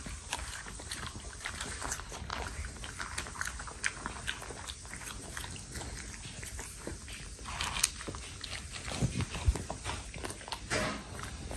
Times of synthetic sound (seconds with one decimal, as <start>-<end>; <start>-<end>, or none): 0.0-2.3; 6.4-6.9

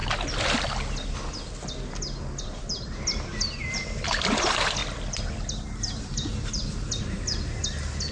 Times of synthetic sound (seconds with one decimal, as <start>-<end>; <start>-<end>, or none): 2.4-4.8; 6.0-6.6

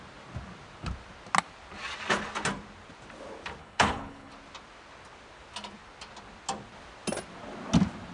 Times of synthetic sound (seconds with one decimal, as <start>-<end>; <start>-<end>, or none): 3.6-4.3

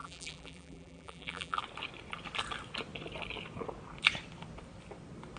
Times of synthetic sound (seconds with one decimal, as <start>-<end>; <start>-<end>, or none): 0.0-1.6

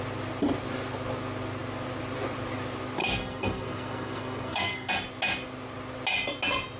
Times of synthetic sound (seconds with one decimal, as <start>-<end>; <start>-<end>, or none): 3.0-4.9

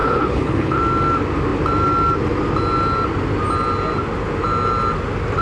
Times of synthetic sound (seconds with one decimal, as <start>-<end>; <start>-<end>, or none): 0.0-0.8